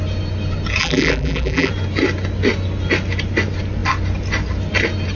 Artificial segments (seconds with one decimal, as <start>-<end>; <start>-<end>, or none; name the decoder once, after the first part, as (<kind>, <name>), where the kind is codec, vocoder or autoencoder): 0.8-1.7 (vocoder, BigVGAN v2)